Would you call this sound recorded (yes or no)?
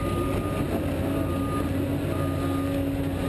yes